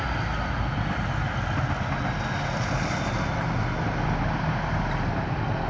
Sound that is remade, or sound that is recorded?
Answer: recorded